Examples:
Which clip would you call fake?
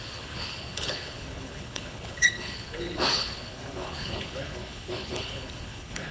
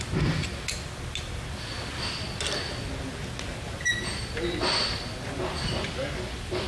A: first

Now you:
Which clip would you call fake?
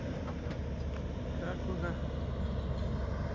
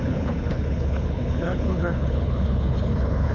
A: second